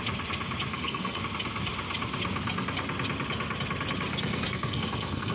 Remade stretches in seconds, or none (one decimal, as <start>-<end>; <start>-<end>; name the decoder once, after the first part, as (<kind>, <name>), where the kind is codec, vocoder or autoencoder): 0.7-1.2 (codec, SNAC); 4.1-5.3